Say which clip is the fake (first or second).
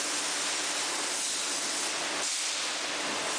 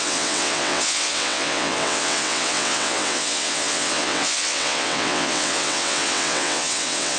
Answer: second